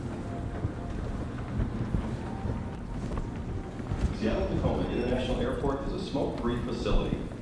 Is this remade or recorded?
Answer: recorded